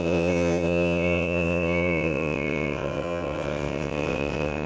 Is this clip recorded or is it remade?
remade